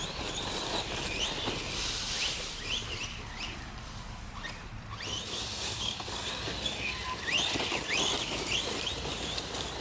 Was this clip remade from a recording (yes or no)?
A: yes